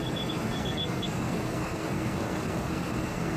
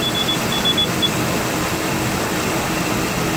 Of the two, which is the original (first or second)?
second